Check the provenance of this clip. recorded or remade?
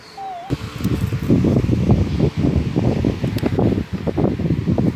recorded